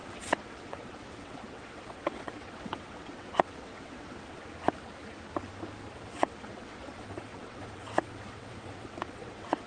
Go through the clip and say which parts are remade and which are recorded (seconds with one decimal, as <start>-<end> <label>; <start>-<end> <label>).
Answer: 0.0-4.4 remade; 4.4-5.9 recorded; 5.9-9.7 remade